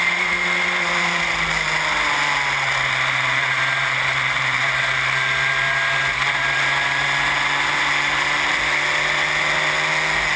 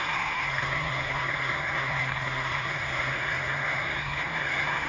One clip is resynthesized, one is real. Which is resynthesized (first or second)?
second